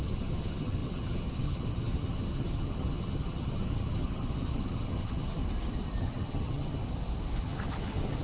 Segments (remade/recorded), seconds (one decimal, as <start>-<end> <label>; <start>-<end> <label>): 0.0-5.4 remade; 5.4-6.0 recorded; 6.0-6.8 remade; 6.8-7.4 recorded; 7.4-8.2 remade